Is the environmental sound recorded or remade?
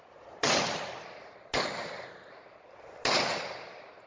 recorded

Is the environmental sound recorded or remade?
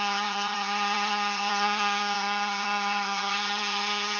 remade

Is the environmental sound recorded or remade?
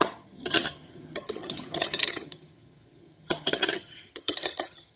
remade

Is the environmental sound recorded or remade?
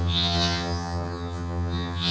remade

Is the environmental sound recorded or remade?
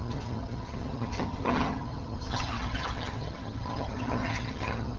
remade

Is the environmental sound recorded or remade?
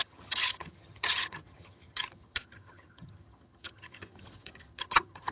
remade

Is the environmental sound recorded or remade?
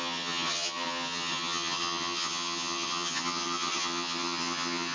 remade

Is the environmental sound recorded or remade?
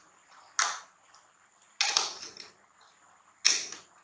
recorded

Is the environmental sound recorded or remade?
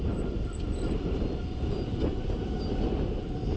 recorded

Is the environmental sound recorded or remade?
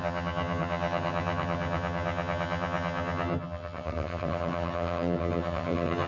remade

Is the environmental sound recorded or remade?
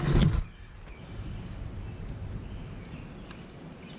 recorded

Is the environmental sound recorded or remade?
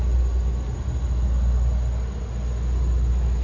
recorded